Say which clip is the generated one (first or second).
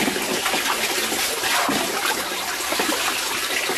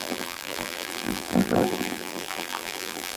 second